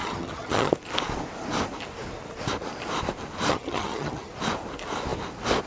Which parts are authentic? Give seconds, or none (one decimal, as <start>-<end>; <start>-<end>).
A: 0.7-3.5; 4.3-5.7